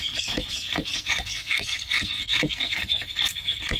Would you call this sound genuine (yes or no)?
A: no